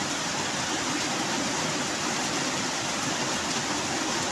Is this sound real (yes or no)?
yes